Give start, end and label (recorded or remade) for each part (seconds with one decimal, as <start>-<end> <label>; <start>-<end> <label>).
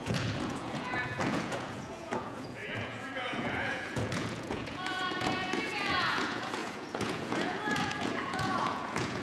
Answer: 0.0-9.2 remade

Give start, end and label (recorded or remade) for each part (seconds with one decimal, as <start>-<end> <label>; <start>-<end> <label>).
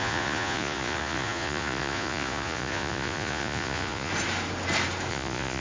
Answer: 0.0-4.1 remade; 4.1-5.1 recorded; 5.1-5.6 remade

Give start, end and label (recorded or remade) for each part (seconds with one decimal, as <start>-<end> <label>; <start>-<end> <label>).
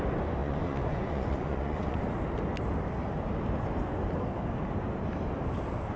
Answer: 0.0-0.4 recorded; 0.4-2.1 remade; 2.1-6.0 recorded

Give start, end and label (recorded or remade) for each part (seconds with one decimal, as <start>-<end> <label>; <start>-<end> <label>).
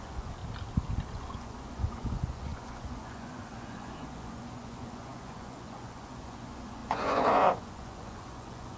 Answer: 0.0-0.4 remade; 0.4-1.1 recorded; 1.1-8.8 remade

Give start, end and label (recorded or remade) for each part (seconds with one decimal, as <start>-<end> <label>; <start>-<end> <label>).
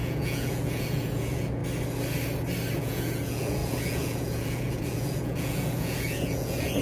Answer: 0.0-1.6 remade; 1.6-2.8 recorded; 2.8-6.8 remade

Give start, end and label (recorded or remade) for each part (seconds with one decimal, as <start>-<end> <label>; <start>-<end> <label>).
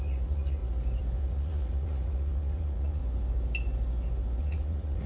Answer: 0.0-0.6 remade; 0.6-1.2 recorded; 1.2-3.0 remade; 3.0-4.4 recorded; 4.4-5.1 remade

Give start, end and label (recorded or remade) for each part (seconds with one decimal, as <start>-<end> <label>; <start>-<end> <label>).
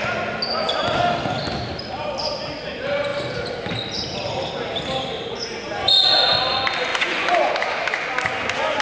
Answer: 0.0-6.9 recorded; 6.9-7.5 remade; 7.5-8.8 recorded